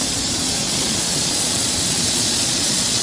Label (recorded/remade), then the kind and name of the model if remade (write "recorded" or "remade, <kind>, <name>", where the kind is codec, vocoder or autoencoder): remade, vocoder, Vocos